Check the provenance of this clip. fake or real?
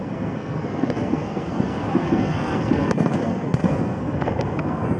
fake